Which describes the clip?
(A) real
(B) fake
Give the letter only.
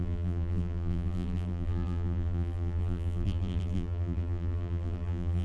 B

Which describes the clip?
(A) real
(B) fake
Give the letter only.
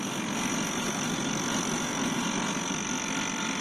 A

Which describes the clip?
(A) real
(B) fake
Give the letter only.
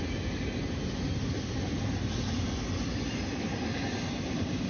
A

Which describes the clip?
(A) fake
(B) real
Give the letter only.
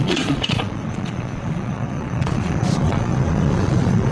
A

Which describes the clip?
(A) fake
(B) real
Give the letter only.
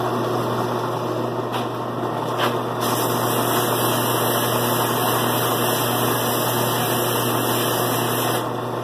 B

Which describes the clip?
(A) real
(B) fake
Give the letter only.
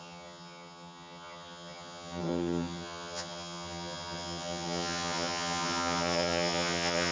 B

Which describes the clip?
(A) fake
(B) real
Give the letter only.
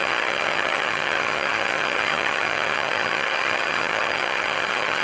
A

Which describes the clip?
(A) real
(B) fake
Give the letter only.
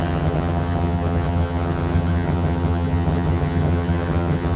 B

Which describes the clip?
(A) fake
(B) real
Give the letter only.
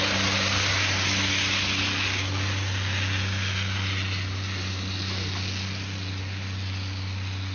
B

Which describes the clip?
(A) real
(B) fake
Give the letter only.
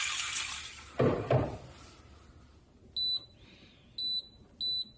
A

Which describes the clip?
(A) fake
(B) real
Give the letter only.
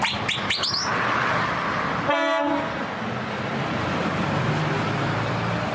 B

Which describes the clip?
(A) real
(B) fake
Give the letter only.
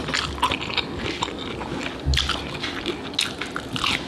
A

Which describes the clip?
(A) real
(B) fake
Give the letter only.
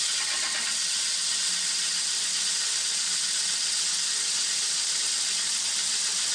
A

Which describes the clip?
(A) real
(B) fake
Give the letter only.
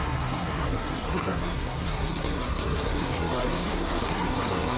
B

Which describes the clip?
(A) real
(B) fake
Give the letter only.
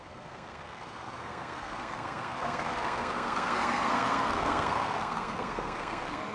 B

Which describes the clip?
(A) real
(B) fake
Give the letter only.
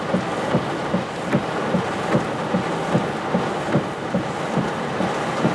A